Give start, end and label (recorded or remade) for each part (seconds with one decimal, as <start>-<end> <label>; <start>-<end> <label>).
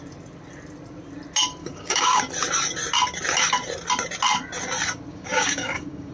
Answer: 0.0-1.6 recorded; 1.6-2.2 remade; 2.2-5.1 recorded; 5.1-6.1 remade